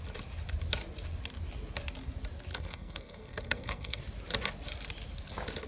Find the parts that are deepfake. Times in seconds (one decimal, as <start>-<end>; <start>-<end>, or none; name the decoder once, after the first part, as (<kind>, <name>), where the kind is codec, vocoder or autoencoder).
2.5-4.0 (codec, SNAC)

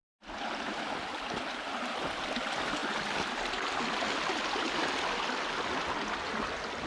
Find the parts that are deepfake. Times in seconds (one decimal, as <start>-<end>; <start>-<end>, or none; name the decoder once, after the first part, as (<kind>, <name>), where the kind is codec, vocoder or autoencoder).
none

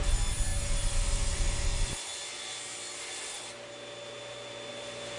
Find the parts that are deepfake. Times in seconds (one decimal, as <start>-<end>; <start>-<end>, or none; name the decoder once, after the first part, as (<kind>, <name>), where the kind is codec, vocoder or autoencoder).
none